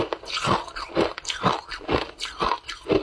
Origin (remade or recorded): recorded